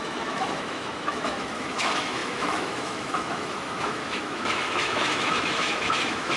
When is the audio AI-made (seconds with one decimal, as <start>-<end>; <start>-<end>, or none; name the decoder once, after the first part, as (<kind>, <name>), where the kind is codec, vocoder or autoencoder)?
0.0-6.4 (autoencoder, DAC-VAE)